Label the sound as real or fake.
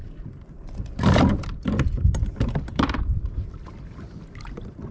fake